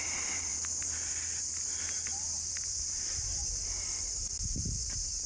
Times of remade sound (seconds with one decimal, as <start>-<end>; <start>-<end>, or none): 0.0-0.5; 1.7-5.3